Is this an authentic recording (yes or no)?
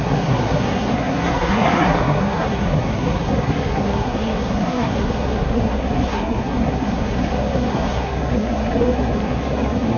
no